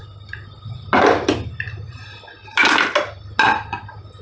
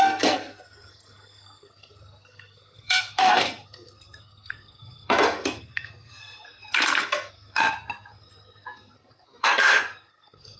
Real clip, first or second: first